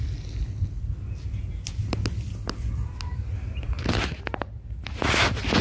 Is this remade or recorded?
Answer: recorded